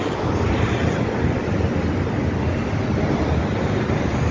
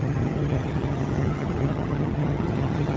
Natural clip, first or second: first